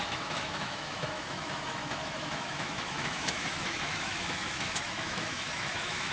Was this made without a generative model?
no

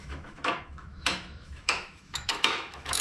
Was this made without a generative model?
no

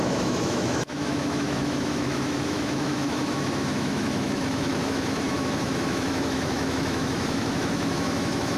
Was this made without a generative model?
no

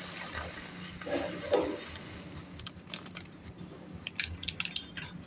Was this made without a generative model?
yes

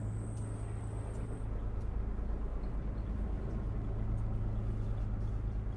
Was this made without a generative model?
yes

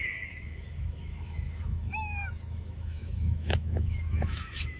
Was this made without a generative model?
no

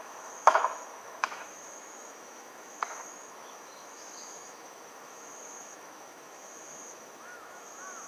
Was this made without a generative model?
no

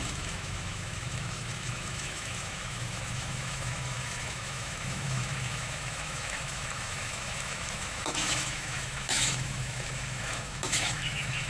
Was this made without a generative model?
no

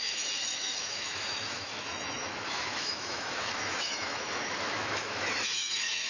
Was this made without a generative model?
no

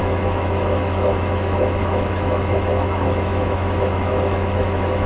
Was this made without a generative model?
no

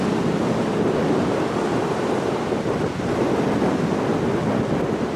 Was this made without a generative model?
yes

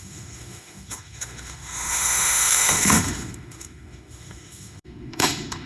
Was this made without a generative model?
no